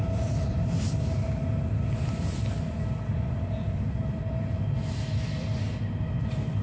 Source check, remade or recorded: recorded